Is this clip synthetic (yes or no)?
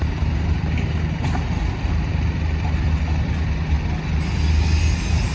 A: no